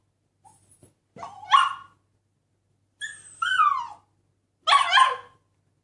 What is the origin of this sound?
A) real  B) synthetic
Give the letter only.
A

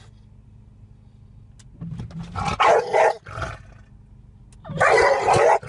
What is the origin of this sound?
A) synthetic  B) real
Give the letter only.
B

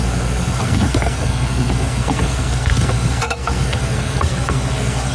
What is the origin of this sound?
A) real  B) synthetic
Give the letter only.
B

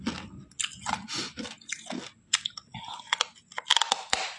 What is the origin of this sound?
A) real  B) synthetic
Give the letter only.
A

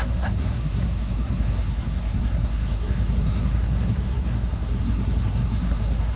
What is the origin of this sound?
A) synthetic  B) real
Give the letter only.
A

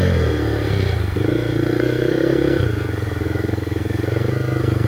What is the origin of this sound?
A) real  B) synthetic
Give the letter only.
B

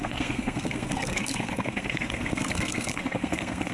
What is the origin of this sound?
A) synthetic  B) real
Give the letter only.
A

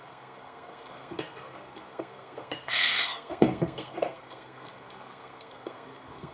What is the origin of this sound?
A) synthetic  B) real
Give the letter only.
A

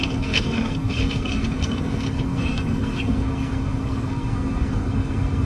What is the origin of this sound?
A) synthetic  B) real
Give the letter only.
A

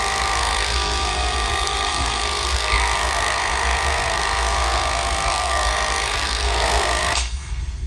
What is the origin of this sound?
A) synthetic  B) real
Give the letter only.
A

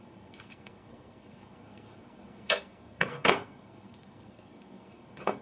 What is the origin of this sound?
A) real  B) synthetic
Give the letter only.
B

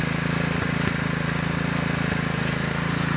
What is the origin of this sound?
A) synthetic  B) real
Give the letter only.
B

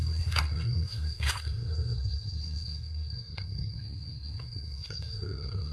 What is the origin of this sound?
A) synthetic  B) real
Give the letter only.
A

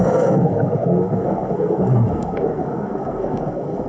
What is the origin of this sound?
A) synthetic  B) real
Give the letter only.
A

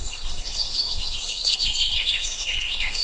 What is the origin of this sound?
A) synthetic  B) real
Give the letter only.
A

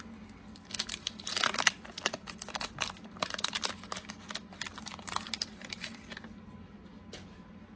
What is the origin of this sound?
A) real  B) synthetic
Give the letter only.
A